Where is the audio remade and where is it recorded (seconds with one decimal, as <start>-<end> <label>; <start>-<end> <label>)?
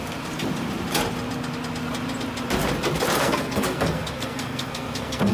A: 0.0-3.2 recorded; 3.2-5.3 remade